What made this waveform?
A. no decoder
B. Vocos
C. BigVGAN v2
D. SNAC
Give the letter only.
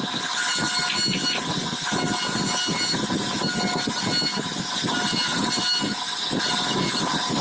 A